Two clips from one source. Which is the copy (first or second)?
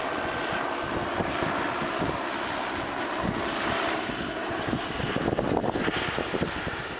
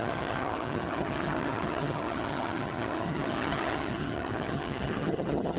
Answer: second